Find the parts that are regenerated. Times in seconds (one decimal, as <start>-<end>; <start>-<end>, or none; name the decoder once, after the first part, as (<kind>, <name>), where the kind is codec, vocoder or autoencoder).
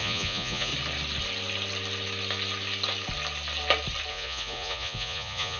0.0-0.7 (vocoder, Vocos); 4.1-5.6